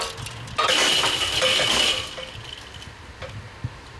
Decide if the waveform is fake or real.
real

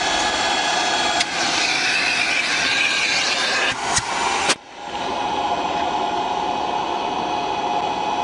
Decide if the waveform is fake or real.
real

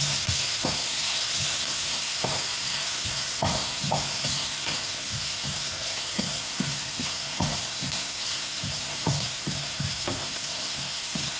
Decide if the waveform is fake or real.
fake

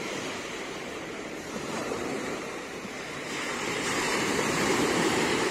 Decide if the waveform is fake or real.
fake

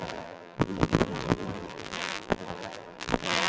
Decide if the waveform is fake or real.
fake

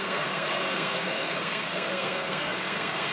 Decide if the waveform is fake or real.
fake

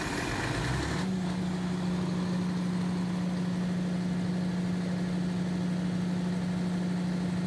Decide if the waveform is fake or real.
real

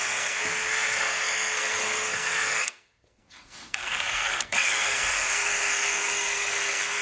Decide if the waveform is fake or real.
fake